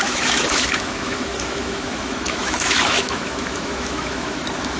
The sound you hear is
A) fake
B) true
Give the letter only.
A